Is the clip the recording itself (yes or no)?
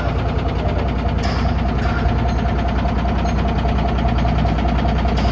yes